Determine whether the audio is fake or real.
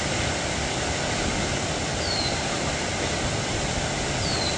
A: real